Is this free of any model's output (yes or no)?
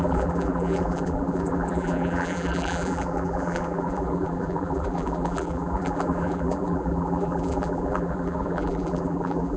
no